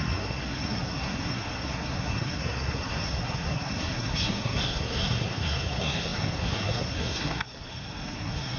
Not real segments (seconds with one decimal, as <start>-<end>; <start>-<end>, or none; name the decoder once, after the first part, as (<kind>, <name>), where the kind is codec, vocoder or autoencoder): 0.0-8.6 (codec, SNAC)